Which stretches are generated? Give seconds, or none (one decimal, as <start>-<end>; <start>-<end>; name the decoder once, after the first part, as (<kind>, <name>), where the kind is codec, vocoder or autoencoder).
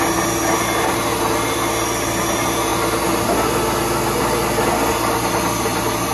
none